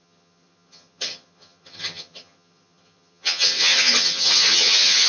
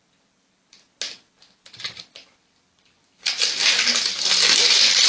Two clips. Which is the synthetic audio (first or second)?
first